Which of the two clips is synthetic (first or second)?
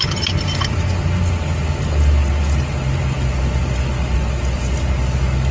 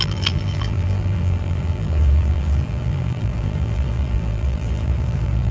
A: second